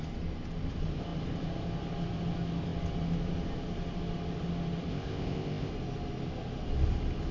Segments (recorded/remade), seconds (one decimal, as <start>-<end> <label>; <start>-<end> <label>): 0.0-4.9 recorded; 4.9-5.7 remade; 5.7-7.3 recorded